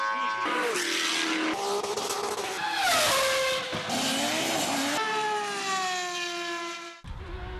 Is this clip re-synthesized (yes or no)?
no